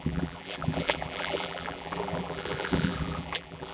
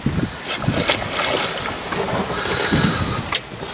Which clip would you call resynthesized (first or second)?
first